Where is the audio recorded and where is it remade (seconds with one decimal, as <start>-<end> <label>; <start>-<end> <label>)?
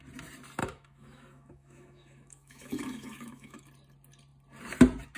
0.0-0.6 recorded; 0.6-3.7 remade; 3.7-5.2 recorded